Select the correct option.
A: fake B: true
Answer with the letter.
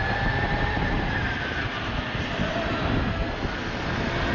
B